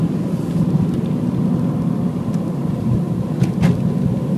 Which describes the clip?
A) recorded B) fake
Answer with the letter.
A